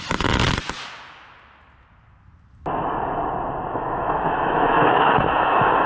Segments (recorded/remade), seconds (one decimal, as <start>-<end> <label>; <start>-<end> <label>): 0.0-0.4 remade; 0.4-3.7 recorded; 3.7-5.9 remade